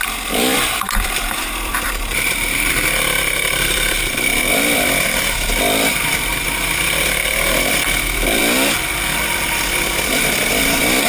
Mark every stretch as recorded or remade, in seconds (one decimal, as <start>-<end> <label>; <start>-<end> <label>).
0.0-8.4 remade; 8.4-9.2 recorded; 9.2-11.1 remade

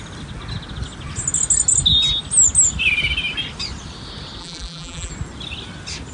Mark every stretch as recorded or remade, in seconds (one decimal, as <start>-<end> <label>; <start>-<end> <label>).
0.0-4.4 recorded; 4.4-5.1 remade; 5.1-6.1 recorded

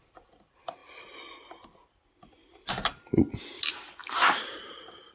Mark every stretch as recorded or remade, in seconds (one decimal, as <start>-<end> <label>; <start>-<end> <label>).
0.0-4.0 recorded; 4.0-5.1 remade

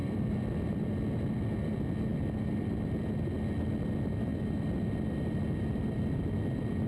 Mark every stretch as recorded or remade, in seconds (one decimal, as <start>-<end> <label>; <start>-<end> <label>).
0.0-0.7 remade; 0.7-4.3 recorded; 4.3-4.9 remade; 4.9-6.9 recorded

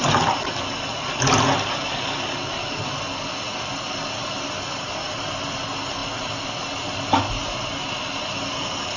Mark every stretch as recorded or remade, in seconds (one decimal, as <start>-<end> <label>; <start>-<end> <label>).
0.0-9.0 recorded